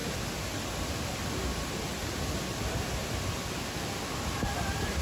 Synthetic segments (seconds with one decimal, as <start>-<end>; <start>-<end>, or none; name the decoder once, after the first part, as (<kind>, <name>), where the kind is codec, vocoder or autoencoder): none